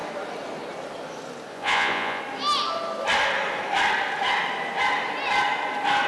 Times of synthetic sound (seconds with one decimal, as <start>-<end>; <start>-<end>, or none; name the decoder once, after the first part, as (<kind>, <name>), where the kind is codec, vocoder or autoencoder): 1.5-2.2 (vocoder, Vocos)